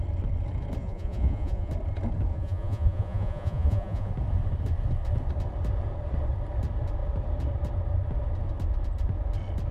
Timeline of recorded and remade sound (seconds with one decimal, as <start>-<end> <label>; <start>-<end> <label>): 0.0-0.8 recorded; 0.8-1.7 remade; 1.7-2.3 recorded; 2.3-4.1 remade; 4.1-9.7 recorded